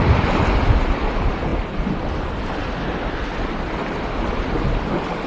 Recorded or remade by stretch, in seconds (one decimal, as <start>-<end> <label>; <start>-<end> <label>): 0.0-5.3 recorded